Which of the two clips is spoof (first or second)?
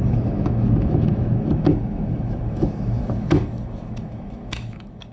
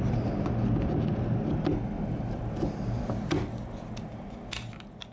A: first